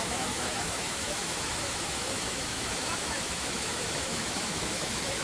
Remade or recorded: remade